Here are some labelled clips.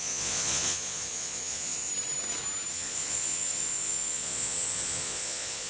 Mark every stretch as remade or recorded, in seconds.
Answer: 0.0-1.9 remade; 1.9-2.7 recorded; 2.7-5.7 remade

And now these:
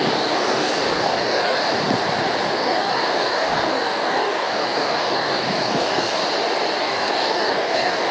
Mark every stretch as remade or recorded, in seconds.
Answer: 0.0-1.7 remade; 1.7-2.5 recorded; 2.5-6.2 remade; 6.2-6.8 recorded; 6.8-8.1 remade

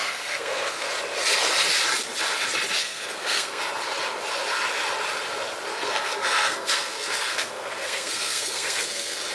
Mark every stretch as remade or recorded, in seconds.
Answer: 0.0-0.9 remade; 0.9-2.8 recorded; 2.8-3.6 remade; 3.6-5.7 recorded; 5.7-9.3 remade

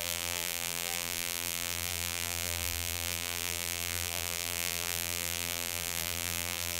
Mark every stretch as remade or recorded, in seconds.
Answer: 0.0-6.8 remade

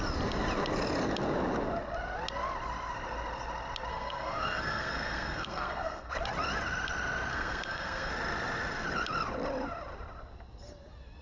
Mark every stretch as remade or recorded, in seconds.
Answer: 0.0-3.9 recorded; 3.9-6.1 remade; 6.1-7.3 recorded; 7.3-8.1 remade; 8.1-11.2 recorded

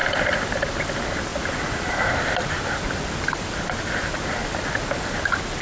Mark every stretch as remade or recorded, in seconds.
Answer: 0.0-0.8 remade; 0.8-1.3 recorded; 1.3-4.7 remade; 4.7-5.6 recorded

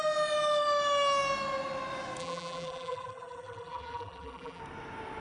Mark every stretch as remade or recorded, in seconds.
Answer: 0.0-2.2 recorded; 2.2-4.6 remade; 4.6-5.2 recorded

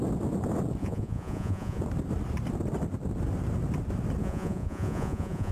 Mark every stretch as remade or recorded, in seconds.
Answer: 0.0-0.8 recorded; 0.8-1.8 remade; 1.8-4.2 recorded; 4.2-5.5 remade